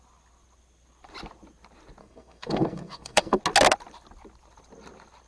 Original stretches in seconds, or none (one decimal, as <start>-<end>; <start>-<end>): 0.0-2.0; 3.4-5.3